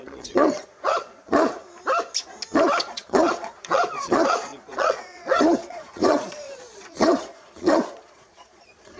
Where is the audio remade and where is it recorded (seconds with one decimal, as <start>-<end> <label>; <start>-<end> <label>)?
0.0-1.6 remade; 1.6-2.9 recorded; 2.9-9.0 remade